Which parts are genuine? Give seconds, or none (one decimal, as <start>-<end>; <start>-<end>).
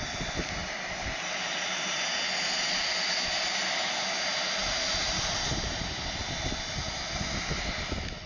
0.0-8.3